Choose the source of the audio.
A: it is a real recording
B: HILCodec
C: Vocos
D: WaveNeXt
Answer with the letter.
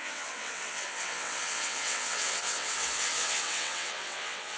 D